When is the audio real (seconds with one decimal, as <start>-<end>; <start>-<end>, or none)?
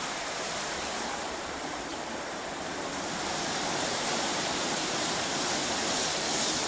1.9-3.1; 5.6-6.7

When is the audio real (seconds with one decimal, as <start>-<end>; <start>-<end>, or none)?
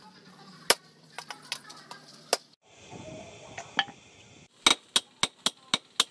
0.0-6.1